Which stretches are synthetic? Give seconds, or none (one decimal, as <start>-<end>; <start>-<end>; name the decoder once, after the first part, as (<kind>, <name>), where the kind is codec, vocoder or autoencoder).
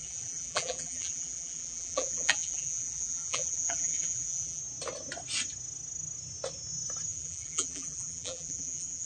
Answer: 0.0-4.6 (vocoder, BigVGAN v2); 7.1-9.1